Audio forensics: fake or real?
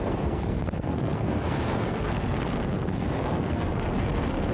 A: fake